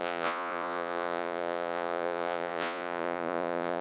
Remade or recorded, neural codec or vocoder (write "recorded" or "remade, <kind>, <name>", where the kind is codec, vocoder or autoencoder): remade, vocoder, Vocos